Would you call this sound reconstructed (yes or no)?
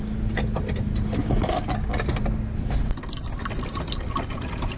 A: no